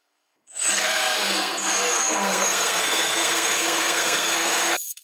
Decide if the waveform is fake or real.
fake